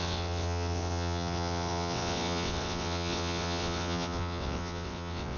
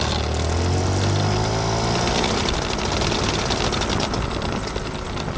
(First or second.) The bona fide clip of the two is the second